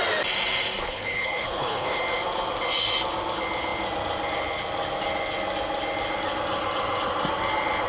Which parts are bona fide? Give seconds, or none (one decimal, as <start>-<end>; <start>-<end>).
0.0-0.8; 2.0-7.9